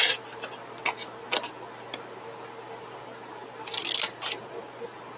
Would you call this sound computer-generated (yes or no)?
no